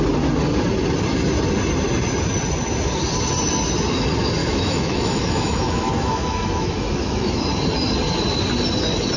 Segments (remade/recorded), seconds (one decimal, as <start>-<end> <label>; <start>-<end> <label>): 0.0-4.4 recorded; 4.4-7.4 remade; 7.4-9.2 recorded